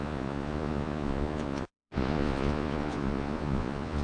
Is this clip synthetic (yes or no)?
yes